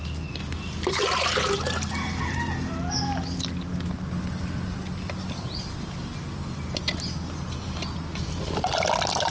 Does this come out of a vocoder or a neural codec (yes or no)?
no